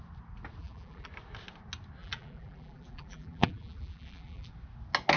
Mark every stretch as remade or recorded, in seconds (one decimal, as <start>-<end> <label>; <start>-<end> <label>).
0.0-0.6 recorded; 0.6-1.1 remade; 1.1-2.0 recorded; 2.0-4.5 remade; 4.5-5.2 recorded